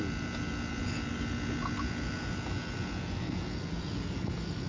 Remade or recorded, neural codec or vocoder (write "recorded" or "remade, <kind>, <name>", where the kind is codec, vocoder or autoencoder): remade, vocoder, Vocos